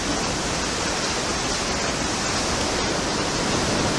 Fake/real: real